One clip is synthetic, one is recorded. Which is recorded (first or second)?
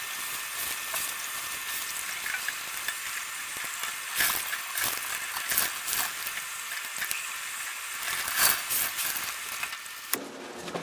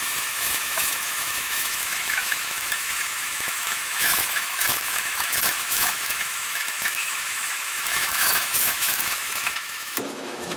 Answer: first